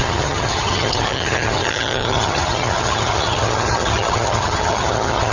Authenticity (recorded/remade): remade